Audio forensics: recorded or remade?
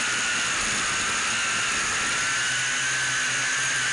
recorded